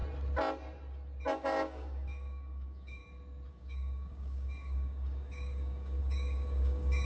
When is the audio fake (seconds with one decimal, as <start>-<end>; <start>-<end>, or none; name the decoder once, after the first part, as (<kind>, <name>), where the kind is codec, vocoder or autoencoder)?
1.3-3.0 (codec, DAC); 3.5-7.1